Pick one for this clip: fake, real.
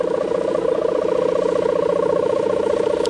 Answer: real